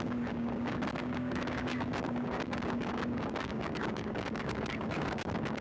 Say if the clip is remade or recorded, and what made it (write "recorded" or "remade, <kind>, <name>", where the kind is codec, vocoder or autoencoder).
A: remade, codec, DAC